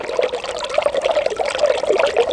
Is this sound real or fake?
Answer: real